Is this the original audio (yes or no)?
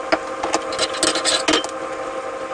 yes